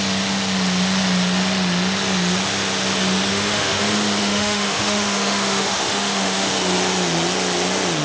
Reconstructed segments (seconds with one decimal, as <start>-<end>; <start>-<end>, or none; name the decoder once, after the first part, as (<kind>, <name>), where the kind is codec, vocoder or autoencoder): 3.3-3.8 (autoencoder, DAC-VAE); 4.2-6.5